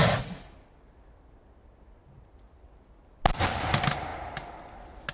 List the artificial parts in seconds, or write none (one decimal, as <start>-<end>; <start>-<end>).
none